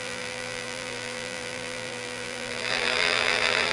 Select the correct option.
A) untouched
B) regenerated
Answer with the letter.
B